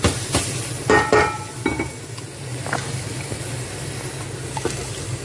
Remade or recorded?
recorded